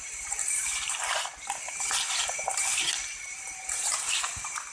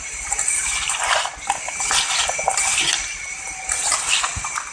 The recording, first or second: second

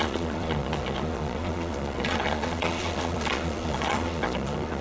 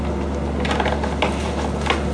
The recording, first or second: second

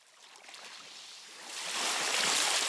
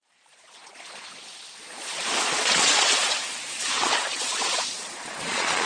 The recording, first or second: first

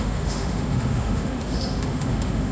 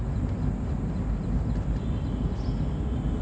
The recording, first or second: second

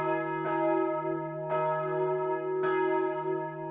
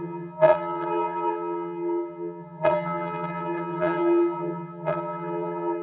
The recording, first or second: first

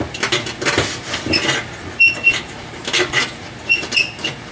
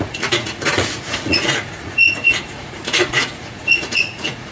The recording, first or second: first